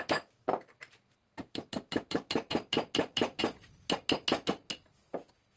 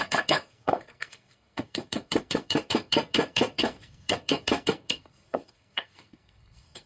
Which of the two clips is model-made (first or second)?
second